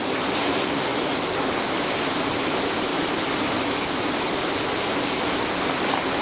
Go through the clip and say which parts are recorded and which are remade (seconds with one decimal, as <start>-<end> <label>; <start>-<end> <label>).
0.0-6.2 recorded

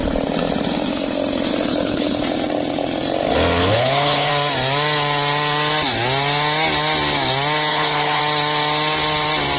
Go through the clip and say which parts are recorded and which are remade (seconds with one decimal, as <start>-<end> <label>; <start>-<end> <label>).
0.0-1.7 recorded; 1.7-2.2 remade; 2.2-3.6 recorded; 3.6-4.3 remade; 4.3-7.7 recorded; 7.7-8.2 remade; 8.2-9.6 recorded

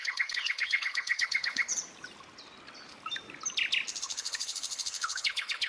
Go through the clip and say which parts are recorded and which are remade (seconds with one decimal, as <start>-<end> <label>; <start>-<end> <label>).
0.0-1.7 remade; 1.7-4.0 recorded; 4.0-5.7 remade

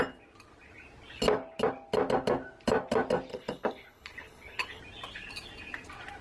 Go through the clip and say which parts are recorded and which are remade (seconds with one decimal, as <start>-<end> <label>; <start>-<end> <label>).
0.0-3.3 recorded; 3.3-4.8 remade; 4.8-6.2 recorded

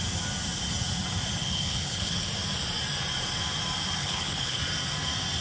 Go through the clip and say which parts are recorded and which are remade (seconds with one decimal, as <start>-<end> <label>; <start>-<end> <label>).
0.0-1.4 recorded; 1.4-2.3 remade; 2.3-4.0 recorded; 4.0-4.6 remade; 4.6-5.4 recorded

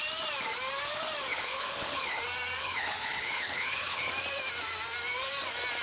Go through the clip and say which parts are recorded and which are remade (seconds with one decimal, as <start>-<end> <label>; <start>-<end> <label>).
0.0-1.3 recorded; 1.3-2.2 remade; 2.2-2.6 recorded; 2.6-4.1 remade; 4.1-5.8 recorded

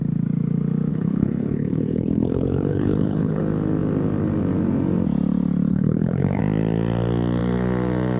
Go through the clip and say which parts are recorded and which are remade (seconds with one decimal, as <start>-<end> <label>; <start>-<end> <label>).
0.0-0.9 recorded; 0.9-3.4 remade; 3.4-5.7 recorded; 5.7-6.4 remade; 6.4-8.2 recorded